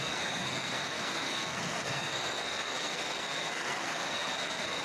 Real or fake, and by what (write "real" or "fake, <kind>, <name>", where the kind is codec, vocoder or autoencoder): fake, codec, SNAC